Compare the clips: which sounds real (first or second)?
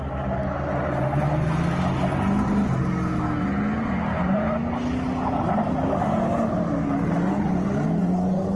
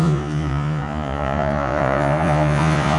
first